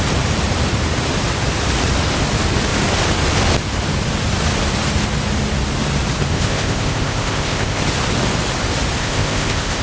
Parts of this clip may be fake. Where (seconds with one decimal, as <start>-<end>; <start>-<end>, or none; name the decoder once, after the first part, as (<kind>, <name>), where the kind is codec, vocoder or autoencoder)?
6.3-7.8 (codec, ZipCodec); 9.0-9.8